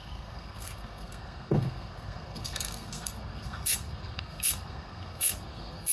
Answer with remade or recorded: remade